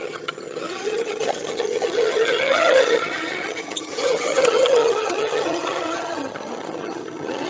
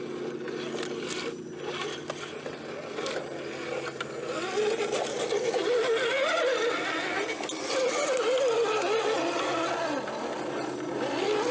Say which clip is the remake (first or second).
first